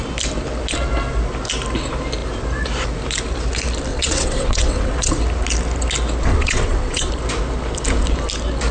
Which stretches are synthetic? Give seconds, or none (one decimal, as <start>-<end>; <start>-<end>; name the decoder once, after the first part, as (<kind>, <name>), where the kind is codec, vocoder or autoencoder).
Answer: 3.9-5.2 (vocoder, WaveNeXt); 6.3-7.1